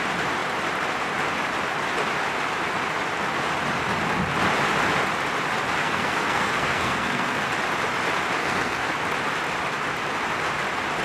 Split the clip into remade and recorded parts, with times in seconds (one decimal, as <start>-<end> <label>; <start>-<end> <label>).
0.0-5.8 recorded; 5.8-7.5 remade; 7.5-8.4 recorded; 8.4-9.0 remade; 9.0-11.0 recorded